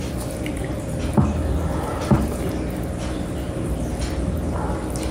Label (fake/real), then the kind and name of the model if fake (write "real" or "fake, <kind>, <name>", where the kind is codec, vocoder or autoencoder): real